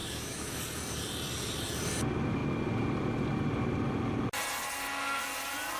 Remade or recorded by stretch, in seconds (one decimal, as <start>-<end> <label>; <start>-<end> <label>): 0.0-0.6 remade; 0.6-5.8 recorded